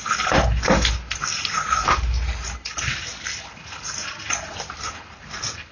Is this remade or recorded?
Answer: recorded